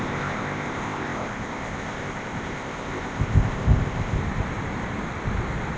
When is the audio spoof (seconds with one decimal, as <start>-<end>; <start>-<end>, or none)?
0.0-4.2